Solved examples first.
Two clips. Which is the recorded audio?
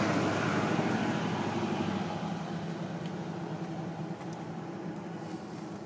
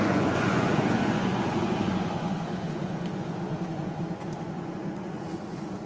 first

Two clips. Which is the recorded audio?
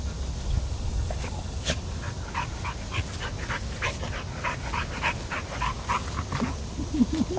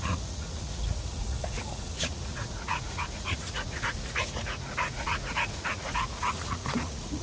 first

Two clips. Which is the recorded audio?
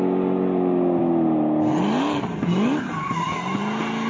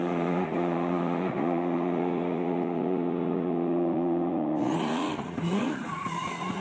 first